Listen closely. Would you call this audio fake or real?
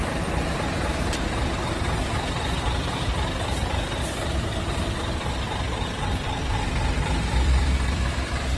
fake